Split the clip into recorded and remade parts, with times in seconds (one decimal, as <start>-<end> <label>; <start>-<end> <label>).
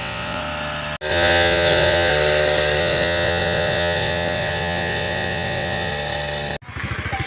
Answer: 0.0-0.4 remade; 0.4-1.1 recorded; 1.1-2.1 remade; 2.1-2.8 recorded; 2.8-5.9 remade; 5.9-7.3 recorded